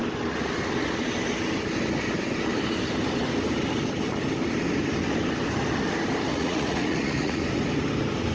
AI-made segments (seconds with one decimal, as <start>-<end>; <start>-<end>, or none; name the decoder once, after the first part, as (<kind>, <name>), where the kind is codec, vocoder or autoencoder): 6.3-7.4 (vocoder, Vocos)